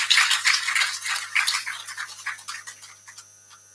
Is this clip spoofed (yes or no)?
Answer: no